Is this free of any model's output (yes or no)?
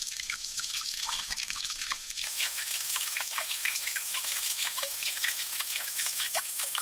no